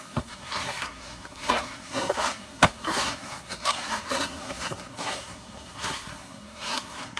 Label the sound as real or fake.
fake